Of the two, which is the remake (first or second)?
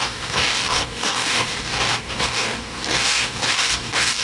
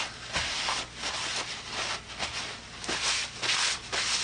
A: first